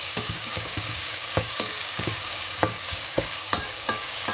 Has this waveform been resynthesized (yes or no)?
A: yes